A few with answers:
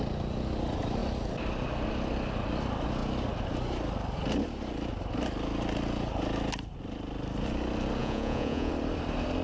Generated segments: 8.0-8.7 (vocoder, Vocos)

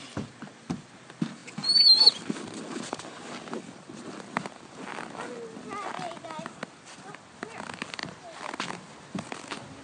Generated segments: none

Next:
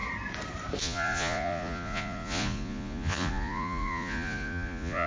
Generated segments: 0.8-5.1 (vocoder, Vocos)

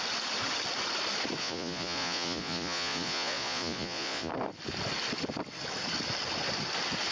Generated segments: 1.4-4.3 (vocoder, Vocos)

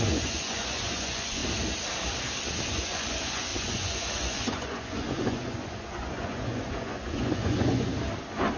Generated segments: 0.0-1.4 (vocoder, Vocos); 2.7-7.9

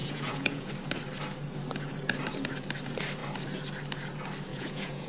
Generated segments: 0.0-0.7 (vocoder, Vocos); 4.5-5.1

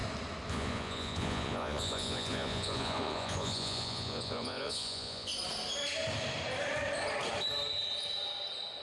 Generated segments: 0.5-5.3 (vocoder, Vocos)

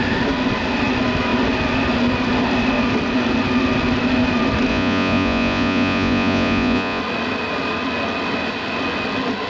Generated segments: 4.7-7.0 (vocoder, Vocos)